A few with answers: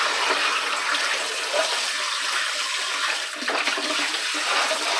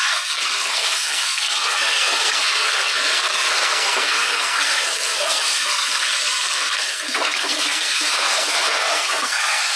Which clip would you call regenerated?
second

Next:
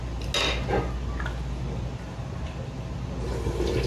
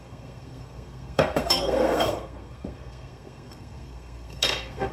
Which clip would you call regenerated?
second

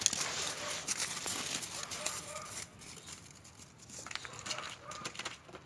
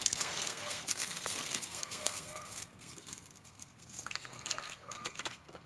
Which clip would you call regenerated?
second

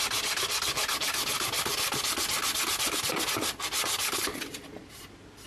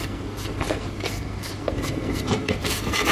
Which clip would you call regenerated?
second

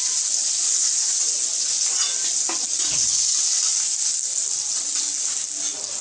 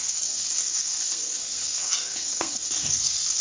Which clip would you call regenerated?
second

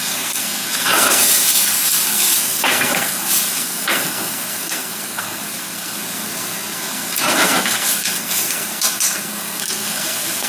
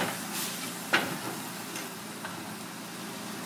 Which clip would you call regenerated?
first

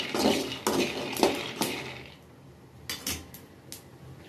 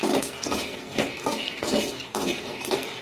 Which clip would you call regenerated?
second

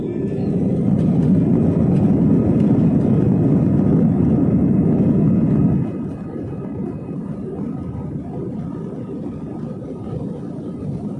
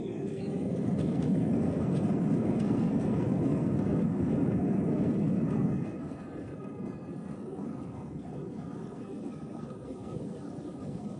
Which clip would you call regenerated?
second